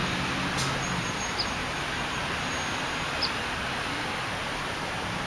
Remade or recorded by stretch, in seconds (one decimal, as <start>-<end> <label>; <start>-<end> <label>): 0.0-5.3 recorded

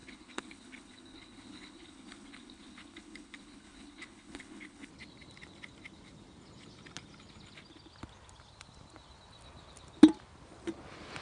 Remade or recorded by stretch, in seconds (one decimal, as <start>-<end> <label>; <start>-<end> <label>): 0.0-4.9 remade; 4.9-11.2 recorded

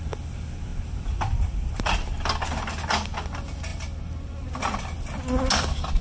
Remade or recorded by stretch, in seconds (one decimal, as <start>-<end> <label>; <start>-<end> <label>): 0.0-6.0 recorded

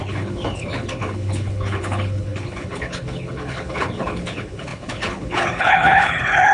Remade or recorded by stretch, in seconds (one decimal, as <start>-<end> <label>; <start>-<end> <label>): 0.0-6.5 remade